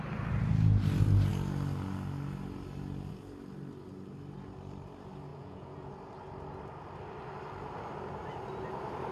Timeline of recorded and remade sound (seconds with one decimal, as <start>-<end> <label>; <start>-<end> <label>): 0.0-5.3 recorded; 5.3-5.9 remade; 5.9-9.1 recorded